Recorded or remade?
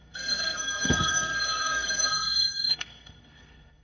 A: remade